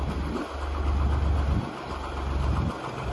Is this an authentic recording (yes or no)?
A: yes